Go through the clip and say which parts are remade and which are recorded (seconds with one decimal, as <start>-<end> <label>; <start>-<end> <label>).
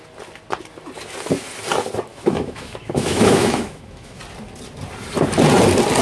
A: 0.0-2.1 recorded; 2.1-4.2 remade; 4.2-6.0 recorded